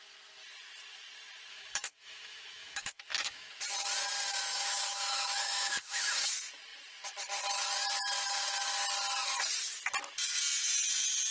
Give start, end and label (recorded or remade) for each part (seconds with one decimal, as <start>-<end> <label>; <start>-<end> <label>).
0.0-1.5 recorded; 1.5-3.5 remade; 3.5-4.5 recorded; 4.5-6.3 remade; 6.3-11.3 recorded